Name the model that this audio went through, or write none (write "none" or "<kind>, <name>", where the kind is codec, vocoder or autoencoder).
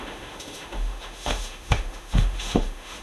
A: autoencoder, DAC-VAE